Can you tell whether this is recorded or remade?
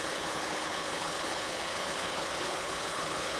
remade